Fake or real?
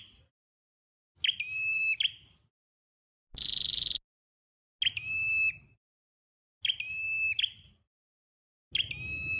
real